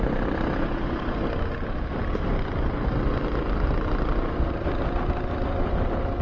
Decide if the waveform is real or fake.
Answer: real